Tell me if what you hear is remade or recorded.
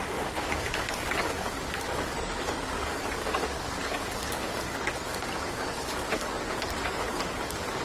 remade